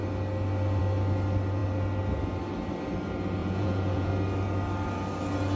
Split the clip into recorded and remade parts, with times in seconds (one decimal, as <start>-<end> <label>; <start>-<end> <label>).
0.0-3.4 recorded; 3.4-4.1 remade; 4.1-5.6 recorded